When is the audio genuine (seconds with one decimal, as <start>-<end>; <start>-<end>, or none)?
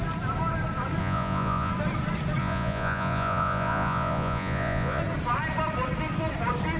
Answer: 0.0-1.0; 1.7-2.4; 5.0-6.8